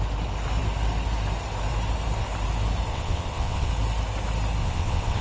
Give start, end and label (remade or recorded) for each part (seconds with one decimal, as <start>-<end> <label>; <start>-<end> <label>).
0.0-2.9 recorded; 2.9-3.7 remade; 3.7-4.6 recorded; 4.6-5.2 remade